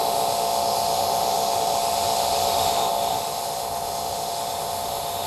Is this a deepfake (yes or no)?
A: yes